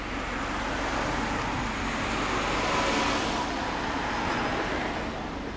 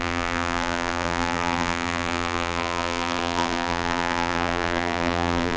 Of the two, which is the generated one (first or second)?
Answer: second